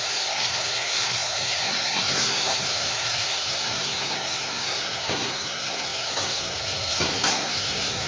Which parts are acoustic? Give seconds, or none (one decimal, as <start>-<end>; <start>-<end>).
none